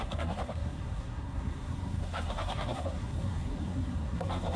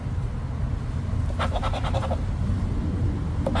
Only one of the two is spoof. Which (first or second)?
first